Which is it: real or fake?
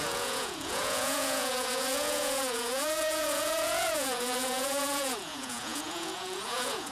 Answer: fake